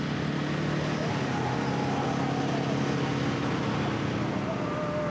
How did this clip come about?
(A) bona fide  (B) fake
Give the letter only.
A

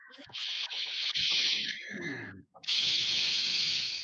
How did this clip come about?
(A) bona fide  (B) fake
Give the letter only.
B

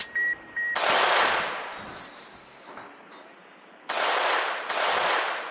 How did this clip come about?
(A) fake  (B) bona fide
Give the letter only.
B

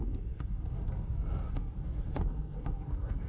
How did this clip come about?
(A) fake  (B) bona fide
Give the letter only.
A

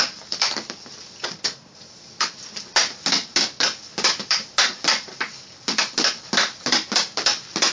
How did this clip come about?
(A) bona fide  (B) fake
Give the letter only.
A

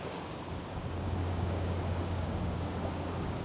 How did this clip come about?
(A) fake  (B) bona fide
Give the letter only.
A